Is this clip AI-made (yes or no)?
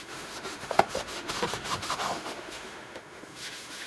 yes